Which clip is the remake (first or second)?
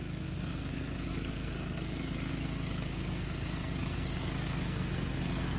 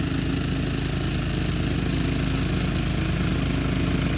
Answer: first